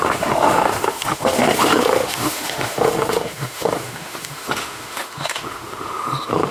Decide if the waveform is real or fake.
fake